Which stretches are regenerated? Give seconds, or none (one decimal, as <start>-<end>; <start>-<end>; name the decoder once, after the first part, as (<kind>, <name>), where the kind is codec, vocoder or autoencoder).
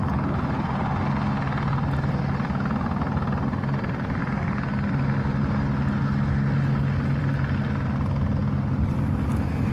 none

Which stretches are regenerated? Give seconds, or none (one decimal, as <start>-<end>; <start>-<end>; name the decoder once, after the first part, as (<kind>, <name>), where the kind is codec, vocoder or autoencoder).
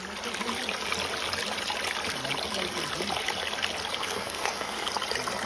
4.0-4.9 (codec, SNAC)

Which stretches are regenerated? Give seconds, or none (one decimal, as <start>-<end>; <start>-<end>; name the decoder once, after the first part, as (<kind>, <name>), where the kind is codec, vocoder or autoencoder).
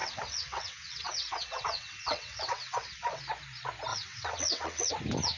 0.0-3.2 (vocoder, WaveNeXt); 3.9-4.9